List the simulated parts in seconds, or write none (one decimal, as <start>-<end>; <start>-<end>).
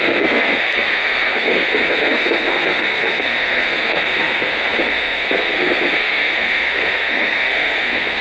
0.0-8.2